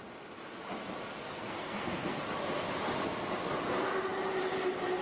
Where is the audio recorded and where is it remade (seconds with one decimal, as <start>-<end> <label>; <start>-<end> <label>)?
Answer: 0.0-1.2 recorded; 1.2-2.2 remade; 2.2-5.0 recorded